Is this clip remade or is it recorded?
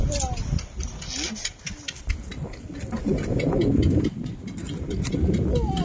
recorded